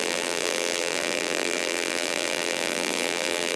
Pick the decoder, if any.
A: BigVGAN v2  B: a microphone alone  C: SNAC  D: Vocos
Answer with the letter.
A